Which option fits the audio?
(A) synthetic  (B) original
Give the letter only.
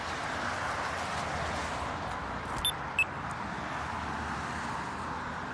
B